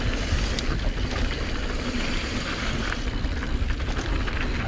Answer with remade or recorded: recorded